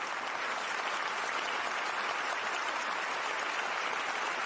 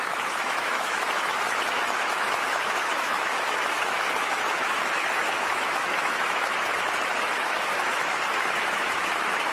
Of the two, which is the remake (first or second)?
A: second